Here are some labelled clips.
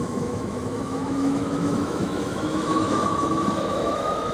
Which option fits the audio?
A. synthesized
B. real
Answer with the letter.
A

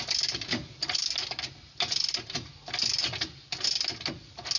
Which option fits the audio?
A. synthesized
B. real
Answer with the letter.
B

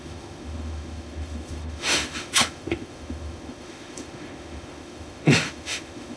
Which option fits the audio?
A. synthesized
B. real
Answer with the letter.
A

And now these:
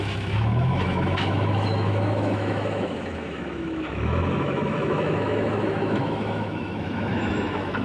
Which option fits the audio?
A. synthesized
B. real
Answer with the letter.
A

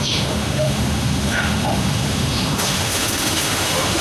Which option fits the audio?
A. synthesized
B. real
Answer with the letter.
A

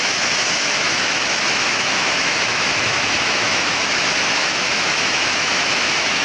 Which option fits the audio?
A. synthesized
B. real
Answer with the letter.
A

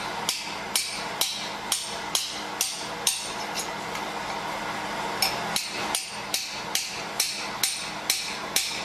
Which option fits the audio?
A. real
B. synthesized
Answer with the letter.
A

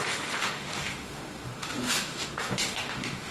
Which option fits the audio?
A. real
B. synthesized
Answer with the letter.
B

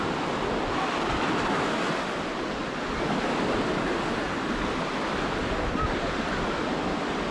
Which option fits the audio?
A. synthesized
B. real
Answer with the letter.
B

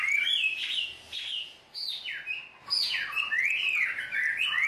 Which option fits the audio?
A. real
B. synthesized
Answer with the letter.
A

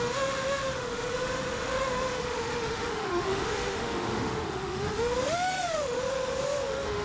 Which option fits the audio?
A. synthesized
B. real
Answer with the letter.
A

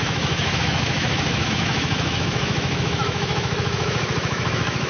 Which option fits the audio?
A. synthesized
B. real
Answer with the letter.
A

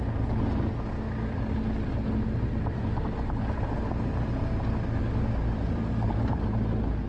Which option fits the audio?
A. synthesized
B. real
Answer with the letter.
B